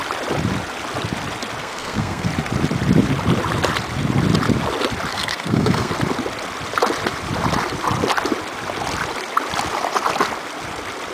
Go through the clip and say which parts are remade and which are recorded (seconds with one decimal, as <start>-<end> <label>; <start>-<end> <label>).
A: 0.0-1.6 recorded; 1.6-2.3 remade; 2.3-5.1 recorded; 5.1-5.9 remade; 5.9-11.1 recorded

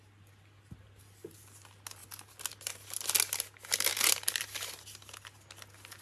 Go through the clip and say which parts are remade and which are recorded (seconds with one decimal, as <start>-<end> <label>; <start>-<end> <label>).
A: 0.0-6.0 recorded

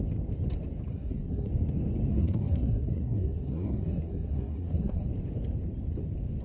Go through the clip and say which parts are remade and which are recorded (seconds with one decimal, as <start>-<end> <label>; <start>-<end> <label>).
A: 0.0-0.9 recorded; 0.9-1.5 remade; 1.5-2.1 recorded; 2.1-5.1 remade; 5.1-6.4 recorded

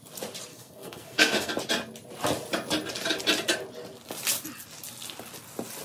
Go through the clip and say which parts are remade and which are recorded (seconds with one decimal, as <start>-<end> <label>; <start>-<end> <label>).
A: 0.0-0.5 recorded; 0.5-1.5 remade; 1.5-5.8 recorded

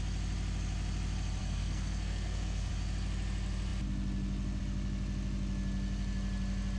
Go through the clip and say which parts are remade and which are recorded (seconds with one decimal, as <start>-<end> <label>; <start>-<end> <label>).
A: 0.0-1.4 recorded; 1.4-2.7 remade; 2.7-6.8 recorded